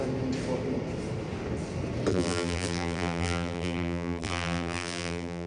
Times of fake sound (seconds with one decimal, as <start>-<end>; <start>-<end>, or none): 2.1-5.5